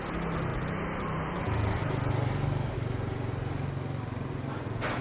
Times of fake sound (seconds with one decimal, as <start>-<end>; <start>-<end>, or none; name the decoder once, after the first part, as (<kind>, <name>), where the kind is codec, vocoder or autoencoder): none